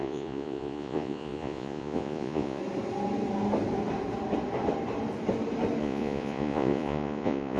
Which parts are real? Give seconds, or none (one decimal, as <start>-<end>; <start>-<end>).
2.6-5.8